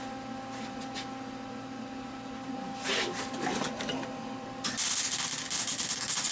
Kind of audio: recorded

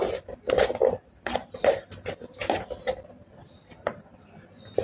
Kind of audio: recorded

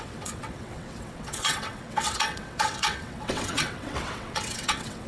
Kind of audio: remade